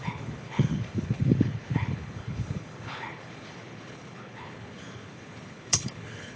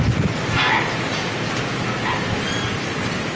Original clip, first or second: second